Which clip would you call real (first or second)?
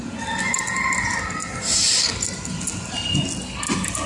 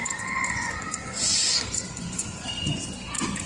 first